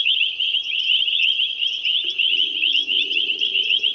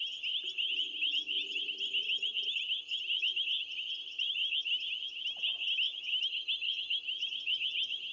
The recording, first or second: second